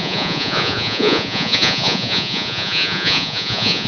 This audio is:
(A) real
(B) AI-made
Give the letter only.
B